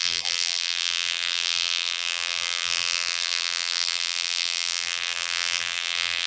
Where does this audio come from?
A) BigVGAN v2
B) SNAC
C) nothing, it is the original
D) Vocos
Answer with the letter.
A